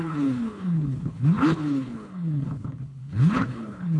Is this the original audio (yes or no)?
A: no